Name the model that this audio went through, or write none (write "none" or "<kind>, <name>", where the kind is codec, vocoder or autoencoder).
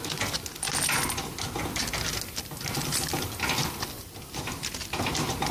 none